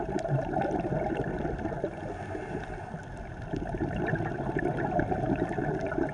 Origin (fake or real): real